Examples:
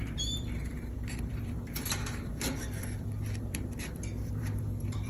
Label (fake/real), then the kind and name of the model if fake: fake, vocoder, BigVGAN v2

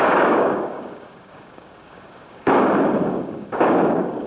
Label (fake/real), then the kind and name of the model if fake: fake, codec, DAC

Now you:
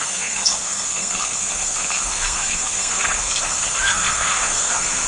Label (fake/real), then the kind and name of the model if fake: fake, codec, SNAC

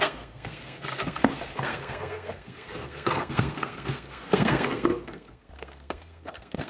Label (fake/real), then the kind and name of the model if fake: fake, codec, SNAC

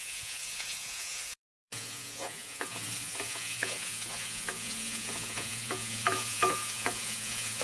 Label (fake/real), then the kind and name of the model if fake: fake, vocoder, Vocos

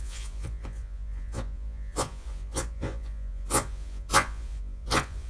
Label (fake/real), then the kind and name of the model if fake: fake, vocoder, Vocos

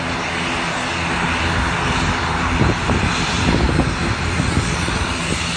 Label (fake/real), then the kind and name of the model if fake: real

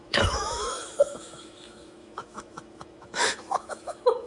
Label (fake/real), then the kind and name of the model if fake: fake, autoencoder, DAC-VAE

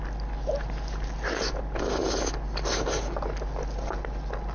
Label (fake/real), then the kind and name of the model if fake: real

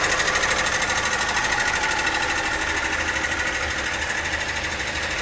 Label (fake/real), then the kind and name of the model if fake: real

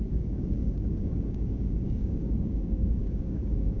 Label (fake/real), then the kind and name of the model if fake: fake, codec, DAC